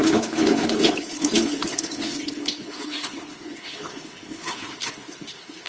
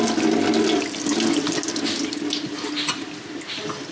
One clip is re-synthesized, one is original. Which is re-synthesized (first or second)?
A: first